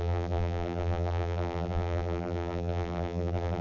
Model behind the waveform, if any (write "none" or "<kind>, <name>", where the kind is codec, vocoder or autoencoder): vocoder, BigVGAN v2